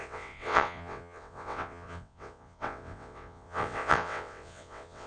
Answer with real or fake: fake